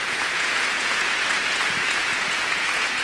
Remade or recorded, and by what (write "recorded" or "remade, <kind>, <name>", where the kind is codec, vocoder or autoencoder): remade, vocoder, Vocos